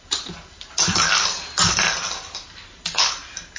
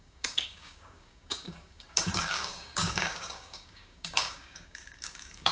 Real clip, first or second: first